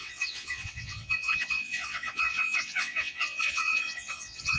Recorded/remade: remade